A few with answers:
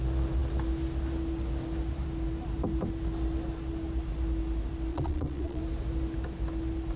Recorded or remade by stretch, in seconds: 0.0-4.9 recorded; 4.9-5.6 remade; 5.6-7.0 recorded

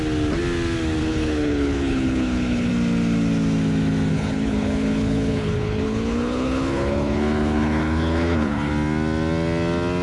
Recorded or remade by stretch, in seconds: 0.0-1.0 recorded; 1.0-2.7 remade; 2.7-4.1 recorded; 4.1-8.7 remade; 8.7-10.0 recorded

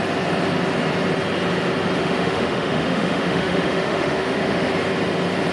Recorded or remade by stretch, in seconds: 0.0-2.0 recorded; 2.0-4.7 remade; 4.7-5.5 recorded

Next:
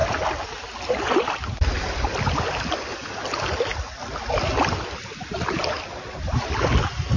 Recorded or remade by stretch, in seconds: 0.0-7.2 recorded

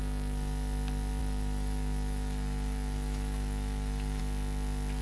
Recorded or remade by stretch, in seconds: 0.0-1.2 recorded; 1.2-4.2 remade; 4.2-5.0 recorded

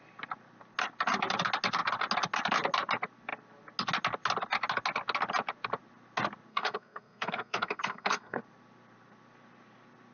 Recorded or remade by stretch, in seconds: 0.0-6.5 recorded; 6.5-8.4 remade; 8.4-10.1 recorded